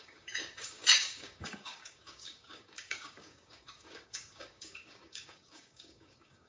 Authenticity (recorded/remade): remade